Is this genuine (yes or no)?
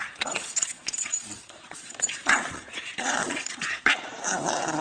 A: no